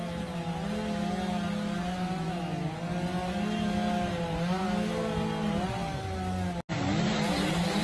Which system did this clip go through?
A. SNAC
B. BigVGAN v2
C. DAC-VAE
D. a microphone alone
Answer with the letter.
D